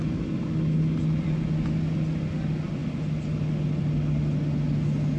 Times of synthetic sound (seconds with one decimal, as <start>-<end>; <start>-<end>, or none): none